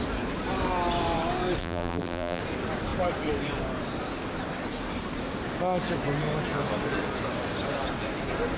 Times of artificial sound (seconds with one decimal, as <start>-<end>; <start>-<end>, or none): 1.6-2.4